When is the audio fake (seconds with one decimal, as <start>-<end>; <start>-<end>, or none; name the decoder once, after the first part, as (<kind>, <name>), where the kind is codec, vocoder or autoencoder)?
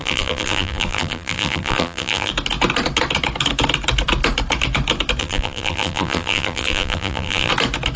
0.0-2.3 (vocoder, BigVGAN v2); 5.2-7.5